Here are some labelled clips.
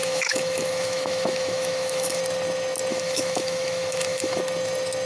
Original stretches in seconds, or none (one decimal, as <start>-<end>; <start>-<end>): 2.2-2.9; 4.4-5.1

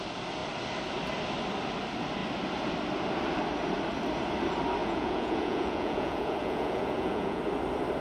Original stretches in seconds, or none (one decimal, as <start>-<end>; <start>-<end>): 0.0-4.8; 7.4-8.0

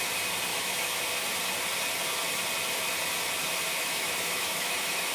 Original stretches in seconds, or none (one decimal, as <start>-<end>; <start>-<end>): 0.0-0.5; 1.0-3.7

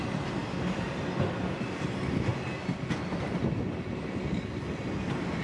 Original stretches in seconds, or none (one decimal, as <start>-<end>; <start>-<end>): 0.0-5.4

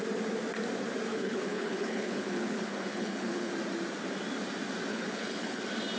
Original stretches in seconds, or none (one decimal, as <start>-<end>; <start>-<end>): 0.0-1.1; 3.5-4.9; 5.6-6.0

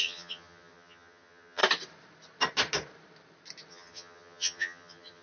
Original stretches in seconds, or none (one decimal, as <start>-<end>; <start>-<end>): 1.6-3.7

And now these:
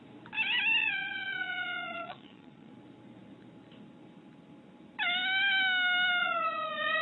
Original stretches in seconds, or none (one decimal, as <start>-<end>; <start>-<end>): 0.0-0.8; 2.7-6.2